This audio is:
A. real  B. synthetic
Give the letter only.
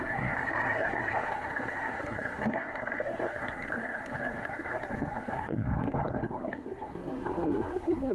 B